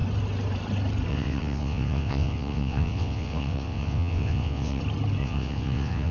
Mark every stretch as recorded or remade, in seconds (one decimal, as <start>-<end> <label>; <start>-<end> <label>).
0.0-1.1 recorded; 1.1-4.8 remade; 4.8-5.2 recorded; 5.2-6.1 remade

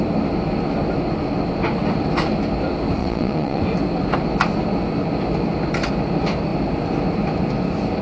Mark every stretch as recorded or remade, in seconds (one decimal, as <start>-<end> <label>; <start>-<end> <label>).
0.0-3.0 recorded; 3.0-3.6 remade; 3.6-8.0 recorded

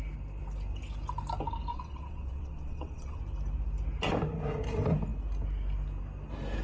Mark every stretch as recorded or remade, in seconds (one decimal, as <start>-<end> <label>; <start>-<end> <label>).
0.0-1.7 recorded; 1.7-3.2 remade; 3.2-6.6 recorded

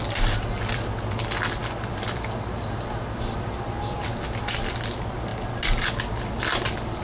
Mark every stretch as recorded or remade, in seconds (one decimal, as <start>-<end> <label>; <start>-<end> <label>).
0.0-7.0 recorded

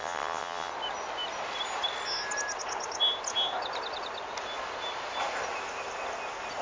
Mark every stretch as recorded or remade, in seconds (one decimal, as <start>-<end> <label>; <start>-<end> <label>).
0.0-0.7 remade; 0.7-6.6 recorded